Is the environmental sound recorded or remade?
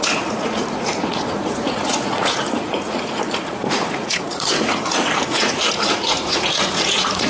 remade